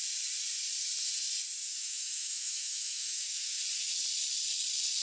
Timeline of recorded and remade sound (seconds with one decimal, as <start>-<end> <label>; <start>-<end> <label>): 0.0-1.6 recorded; 1.6-3.6 remade; 3.6-5.0 recorded